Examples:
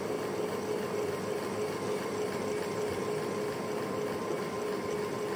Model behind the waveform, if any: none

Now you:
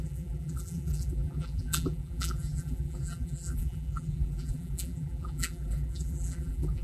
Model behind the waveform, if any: vocoder, BigVGAN v2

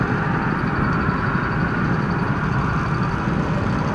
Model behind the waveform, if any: none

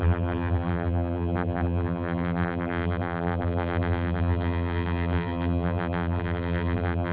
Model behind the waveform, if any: vocoder, BigVGAN v2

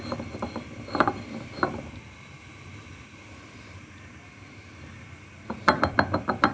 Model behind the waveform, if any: vocoder, BigVGAN v2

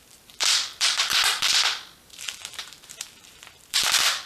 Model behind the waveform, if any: vocoder, BigVGAN v2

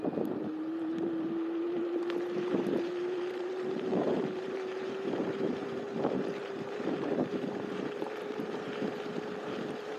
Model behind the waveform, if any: vocoder, BigVGAN v2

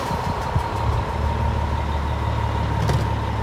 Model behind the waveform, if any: none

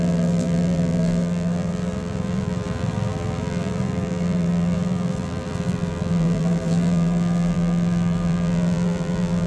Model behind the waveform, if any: vocoder, BigVGAN v2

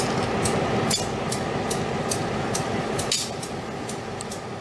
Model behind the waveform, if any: none